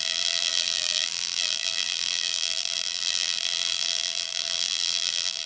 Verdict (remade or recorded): remade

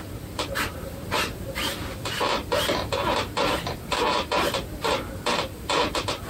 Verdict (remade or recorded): remade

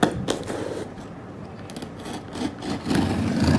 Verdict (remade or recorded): recorded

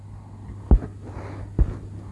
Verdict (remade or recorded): recorded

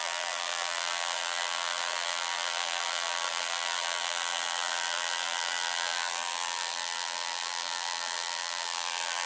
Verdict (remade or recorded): remade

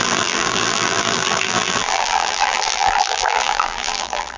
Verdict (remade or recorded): remade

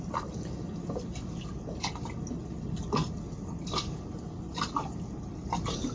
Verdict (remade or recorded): recorded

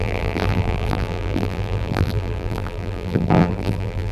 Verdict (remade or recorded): remade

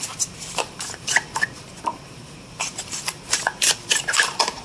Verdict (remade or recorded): remade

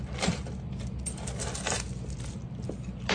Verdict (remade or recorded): recorded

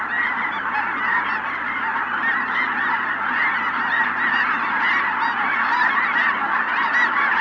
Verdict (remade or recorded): remade